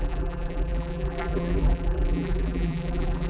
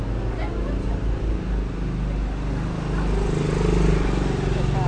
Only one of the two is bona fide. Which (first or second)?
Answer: second